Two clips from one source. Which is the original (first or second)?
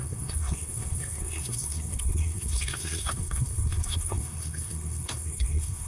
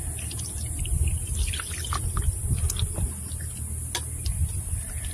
second